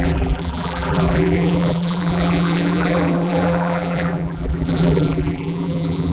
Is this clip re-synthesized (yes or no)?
yes